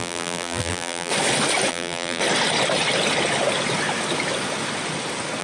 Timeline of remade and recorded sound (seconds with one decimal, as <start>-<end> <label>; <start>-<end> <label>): 0.0-1.1 remade; 1.1-1.7 recorded; 1.7-2.2 remade; 2.2-5.4 recorded